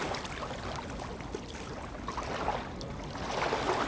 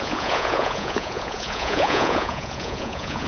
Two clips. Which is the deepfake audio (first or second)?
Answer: second